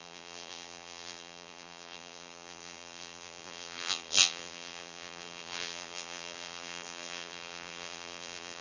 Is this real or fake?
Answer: fake